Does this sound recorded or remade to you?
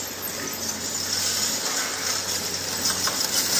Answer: recorded